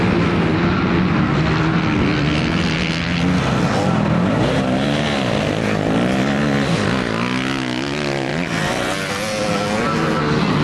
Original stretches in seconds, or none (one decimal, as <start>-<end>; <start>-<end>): 0.0-10.6